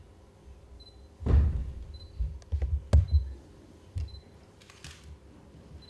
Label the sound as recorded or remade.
recorded